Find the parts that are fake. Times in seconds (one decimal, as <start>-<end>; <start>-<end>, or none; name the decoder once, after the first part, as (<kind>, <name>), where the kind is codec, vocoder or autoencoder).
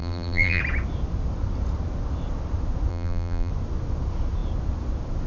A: 0.0-0.6 (vocoder, BigVGAN v2); 2.9-3.5